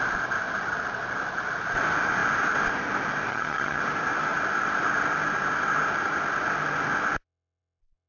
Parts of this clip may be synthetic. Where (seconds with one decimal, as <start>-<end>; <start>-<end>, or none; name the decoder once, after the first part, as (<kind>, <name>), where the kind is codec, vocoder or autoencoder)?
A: 3.3-3.8 (vocoder, HiFi-GAN)